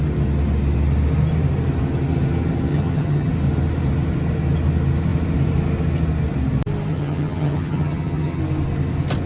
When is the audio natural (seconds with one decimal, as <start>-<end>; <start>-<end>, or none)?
0.0-2.7; 3.3-6.9; 8.4-9.3